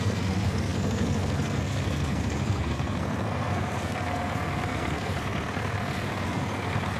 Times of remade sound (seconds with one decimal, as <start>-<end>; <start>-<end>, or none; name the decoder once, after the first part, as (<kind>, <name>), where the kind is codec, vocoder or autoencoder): 0.0-7.0 (codec, SNAC)